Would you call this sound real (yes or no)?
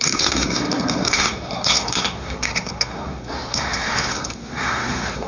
no